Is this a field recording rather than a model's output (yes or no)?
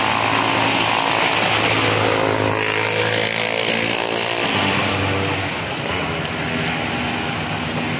yes